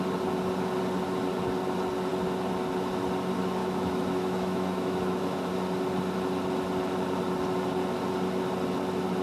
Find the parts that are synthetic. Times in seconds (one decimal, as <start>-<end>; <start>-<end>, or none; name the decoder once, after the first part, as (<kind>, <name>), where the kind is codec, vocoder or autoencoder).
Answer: 3.6-5.5 (autoencoder, DAC-VAE)